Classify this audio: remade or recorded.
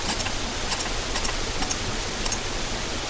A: remade